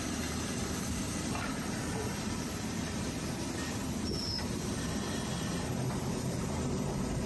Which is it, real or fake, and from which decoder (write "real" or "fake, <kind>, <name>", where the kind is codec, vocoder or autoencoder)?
fake, vocoder, BigVGAN v2